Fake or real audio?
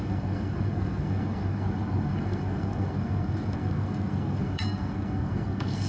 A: fake